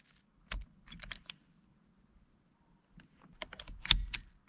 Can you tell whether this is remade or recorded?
recorded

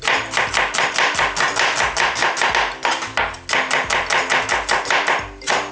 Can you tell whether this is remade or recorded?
recorded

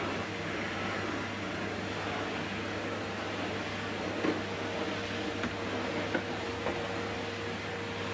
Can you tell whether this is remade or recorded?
recorded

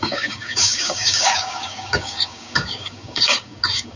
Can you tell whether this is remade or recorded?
remade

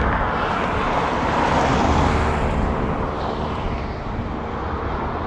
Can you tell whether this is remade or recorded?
recorded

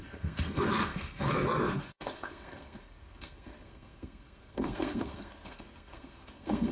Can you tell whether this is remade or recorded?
remade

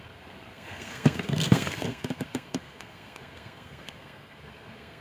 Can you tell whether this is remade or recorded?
remade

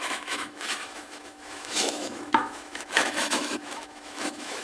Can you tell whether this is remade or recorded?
remade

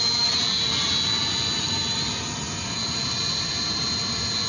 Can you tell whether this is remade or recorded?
recorded